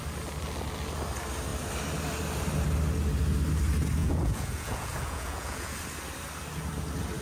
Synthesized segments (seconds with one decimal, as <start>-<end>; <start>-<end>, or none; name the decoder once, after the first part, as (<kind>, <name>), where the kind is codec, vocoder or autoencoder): 4.0-5.8 (vocoder, Vocos)